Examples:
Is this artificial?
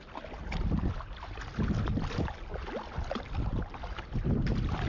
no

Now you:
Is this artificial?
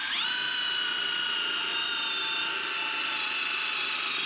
no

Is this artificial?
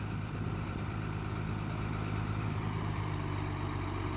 yes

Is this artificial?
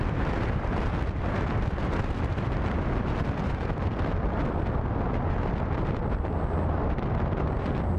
no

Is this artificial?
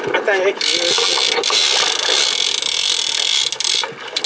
no